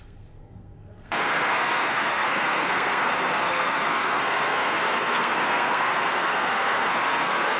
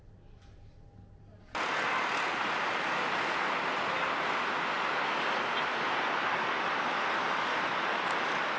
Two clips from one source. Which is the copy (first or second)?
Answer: first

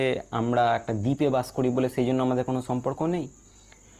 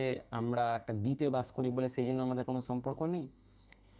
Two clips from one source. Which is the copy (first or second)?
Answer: second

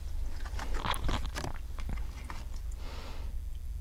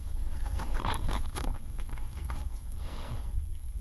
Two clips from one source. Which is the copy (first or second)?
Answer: second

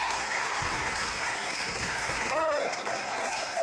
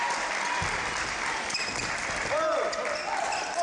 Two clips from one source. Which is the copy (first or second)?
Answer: first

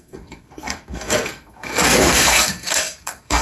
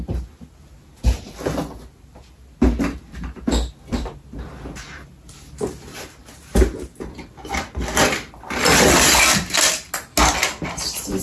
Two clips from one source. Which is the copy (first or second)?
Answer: first